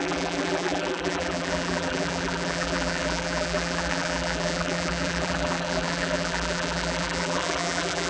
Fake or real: fake